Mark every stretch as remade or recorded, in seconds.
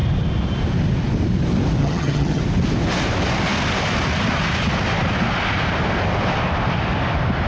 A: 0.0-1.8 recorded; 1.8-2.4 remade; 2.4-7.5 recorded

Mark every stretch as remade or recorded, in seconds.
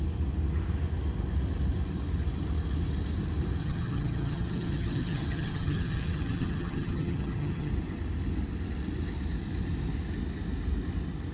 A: 0.0-3.6 recorded; 3.6-7.7 remade; 7.7-11.3 recorded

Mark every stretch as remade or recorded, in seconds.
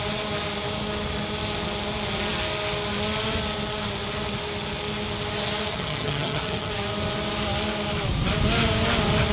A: 0.0-5.7 recorded; 5.7-6.7 remade; 6.7-9.3 recorded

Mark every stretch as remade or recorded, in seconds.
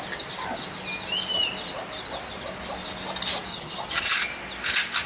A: 0.0-3.5 recorded; 3.5-4.0 remade; 4.0-5.1 recorded